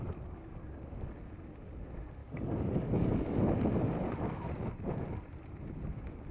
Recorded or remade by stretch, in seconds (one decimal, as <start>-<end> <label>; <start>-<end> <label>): 0.0-2.2 recorded; 2.2-3.4 remade; 3.4-6.3 recorded